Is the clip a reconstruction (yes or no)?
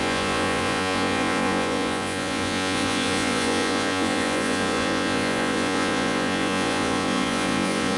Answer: yes